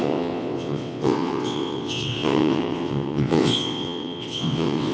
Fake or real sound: fake